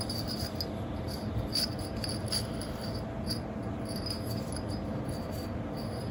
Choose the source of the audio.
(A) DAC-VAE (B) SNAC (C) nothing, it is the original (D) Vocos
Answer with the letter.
C